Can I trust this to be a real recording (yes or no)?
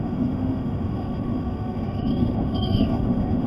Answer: no